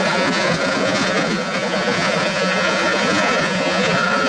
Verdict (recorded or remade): remade